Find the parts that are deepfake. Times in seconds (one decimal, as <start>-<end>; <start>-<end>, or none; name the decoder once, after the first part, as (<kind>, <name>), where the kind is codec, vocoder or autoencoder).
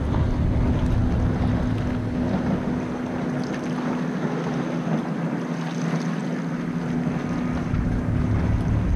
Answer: 7.6-8.3 (codec, DAC)